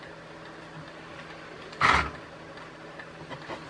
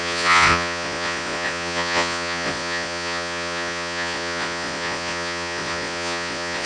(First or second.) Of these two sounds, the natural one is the first